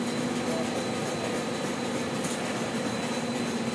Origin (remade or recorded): recorded